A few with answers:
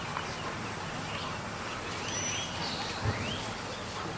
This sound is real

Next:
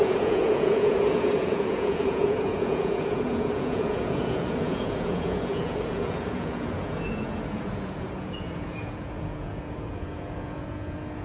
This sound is fake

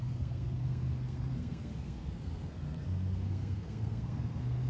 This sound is fake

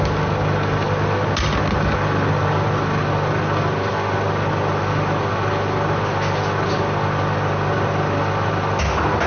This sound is real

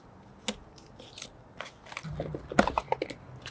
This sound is real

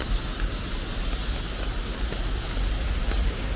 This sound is real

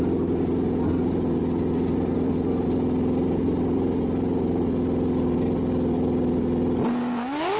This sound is real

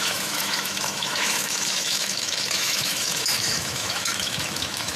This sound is fake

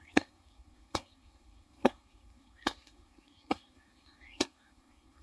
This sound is fake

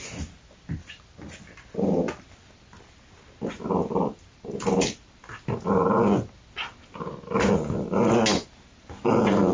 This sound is real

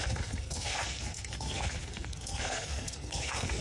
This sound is fake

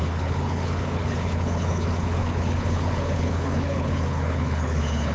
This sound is fake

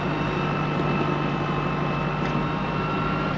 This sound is real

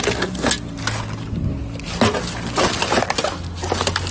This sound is real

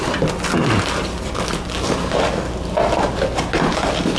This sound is real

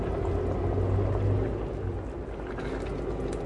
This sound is real